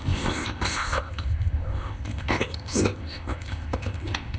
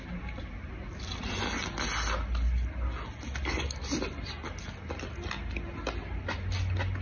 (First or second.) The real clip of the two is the second